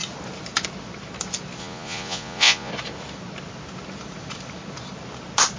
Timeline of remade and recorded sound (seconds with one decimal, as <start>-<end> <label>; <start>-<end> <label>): 0.0-1.6 recorded; 1.6-2.7 remade; 2.7-5.6 recorded